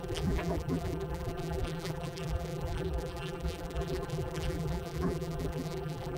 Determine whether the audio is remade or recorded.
remade